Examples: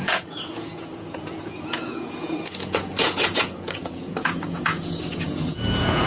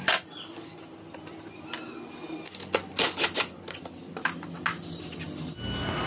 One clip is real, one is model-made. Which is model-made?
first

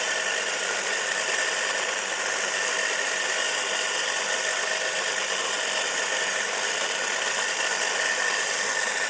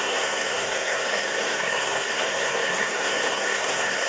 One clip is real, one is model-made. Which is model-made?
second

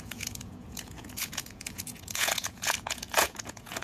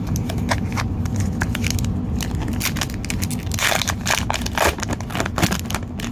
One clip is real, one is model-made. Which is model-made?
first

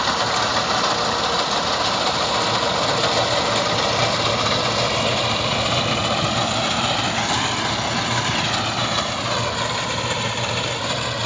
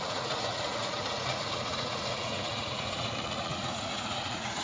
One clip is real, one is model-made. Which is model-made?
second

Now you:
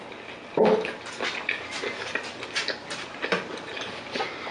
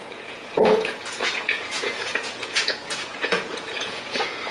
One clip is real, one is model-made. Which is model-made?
second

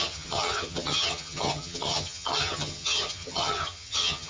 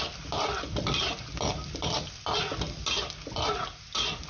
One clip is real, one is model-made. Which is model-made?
first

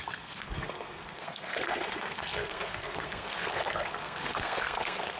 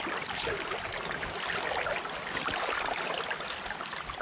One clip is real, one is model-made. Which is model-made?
first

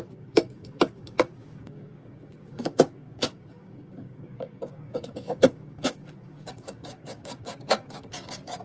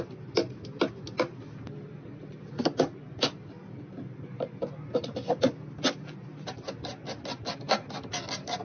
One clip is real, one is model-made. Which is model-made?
first